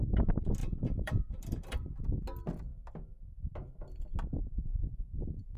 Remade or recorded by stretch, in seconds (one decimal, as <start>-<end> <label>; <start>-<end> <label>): 0.0-0.6 recorded; 0.6-2.1 remade; 2.1-4.7 recorded; 4.7-5.6 remade